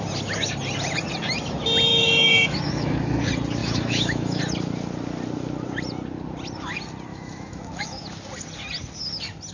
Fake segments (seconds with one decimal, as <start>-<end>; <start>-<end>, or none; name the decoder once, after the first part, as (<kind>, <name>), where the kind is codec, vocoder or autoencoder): 1.9-3.2 (autoencoder, DAC-VAE); 3.6-4.4; 7.1-8.0